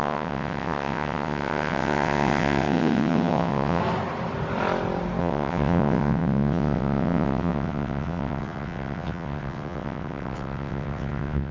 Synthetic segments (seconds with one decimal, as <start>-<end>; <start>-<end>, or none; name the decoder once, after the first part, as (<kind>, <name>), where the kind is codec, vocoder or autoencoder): 0.0-3.8 (vocoder, WaveNeXt); 5.2-11.5